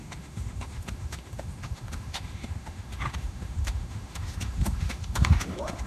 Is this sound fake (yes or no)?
yes